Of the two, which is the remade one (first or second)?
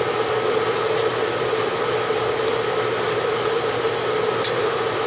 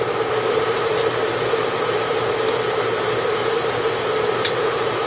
second